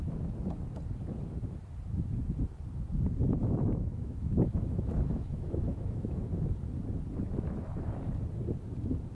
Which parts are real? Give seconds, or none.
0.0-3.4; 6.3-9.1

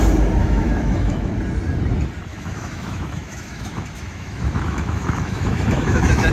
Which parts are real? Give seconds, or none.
0.0-0.4; 1.3-2.3

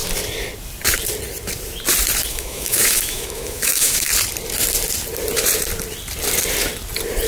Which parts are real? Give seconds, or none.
0.0-2.3; 4.1-7.3

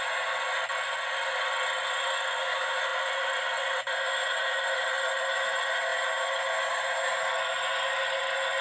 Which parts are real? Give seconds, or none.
0.0-8.6